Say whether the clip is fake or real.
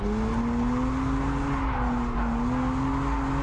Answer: real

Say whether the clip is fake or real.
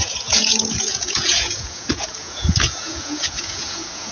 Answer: fake